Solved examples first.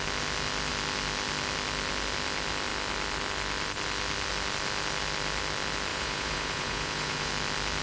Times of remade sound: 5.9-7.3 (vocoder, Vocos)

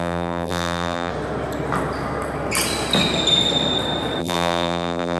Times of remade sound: 0.0-1.1 (vocoder, BigVGAN v2); 4.2-5.2